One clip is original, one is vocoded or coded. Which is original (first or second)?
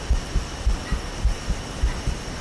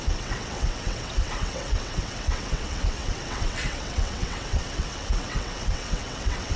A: first